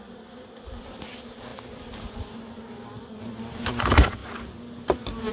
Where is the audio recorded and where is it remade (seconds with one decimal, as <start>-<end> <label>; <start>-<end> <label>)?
0.0-5.3 recorded